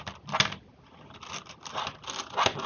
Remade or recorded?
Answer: recorded